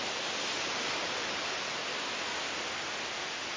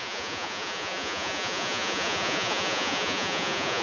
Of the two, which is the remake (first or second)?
second